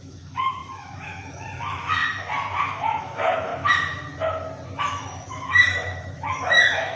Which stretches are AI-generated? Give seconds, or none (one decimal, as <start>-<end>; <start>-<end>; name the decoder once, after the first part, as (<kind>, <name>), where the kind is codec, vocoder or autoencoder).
0.0-2.0 (autoencoder, DAC-VAE); 2.6-3.5; 4.8-7.0